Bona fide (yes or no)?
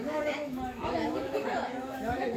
no